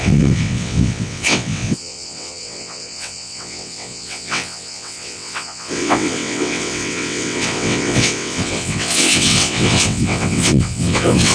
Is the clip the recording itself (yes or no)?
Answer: no